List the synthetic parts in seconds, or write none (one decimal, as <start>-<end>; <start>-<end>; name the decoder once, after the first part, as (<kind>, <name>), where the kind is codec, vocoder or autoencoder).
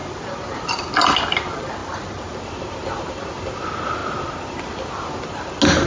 none